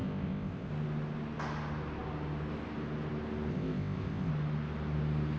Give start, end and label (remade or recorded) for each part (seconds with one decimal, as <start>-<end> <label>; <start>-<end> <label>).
0.0-0.7 remade; 0.7-3.5 recorded; 3.5-4.3 remade; 4.3-5.4 recorded